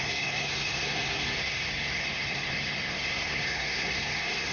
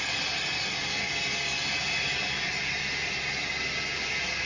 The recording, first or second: second